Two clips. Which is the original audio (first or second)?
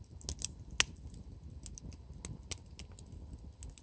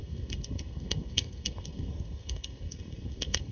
first